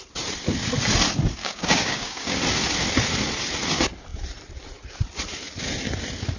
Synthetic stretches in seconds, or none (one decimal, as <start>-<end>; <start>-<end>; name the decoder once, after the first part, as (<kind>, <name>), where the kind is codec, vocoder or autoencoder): 1.4-2.4 (codec, DAC)